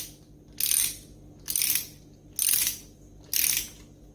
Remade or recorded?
recorded